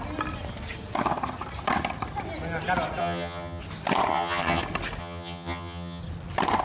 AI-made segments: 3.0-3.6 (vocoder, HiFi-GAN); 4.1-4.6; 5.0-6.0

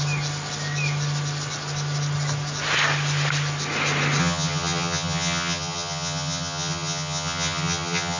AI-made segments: 4.2-8.2 (vocoder, HiFi-GAN)

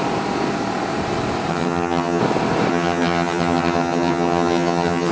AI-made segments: 1.5-2.2 (vocoder, HiFi-GAN); 2.7-5.1